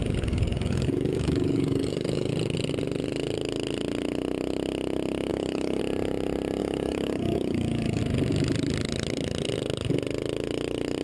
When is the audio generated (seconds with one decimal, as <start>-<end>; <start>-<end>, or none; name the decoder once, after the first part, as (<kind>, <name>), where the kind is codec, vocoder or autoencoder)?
0.0-2.3 (codec, DAC); 5.3-5.8; 6.6-8.0